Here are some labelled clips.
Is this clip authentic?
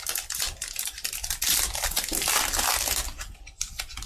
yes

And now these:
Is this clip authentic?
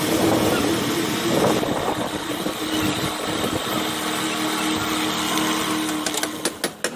yes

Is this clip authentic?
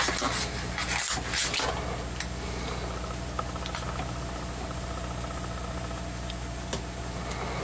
yes